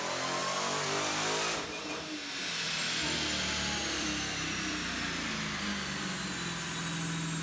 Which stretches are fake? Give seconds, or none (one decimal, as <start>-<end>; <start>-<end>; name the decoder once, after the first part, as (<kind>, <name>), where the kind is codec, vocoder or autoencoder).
0.4-1.9 (vocoder, BigVGAN v2); 3.8-4.9